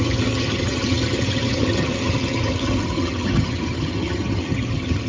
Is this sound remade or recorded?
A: remade